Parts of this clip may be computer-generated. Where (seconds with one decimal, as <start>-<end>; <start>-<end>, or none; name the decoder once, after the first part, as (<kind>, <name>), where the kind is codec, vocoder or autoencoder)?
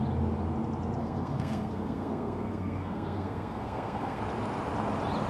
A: 1.0-4.2 (codec, SNAC)